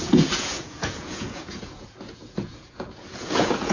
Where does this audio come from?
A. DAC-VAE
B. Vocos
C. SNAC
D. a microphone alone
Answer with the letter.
B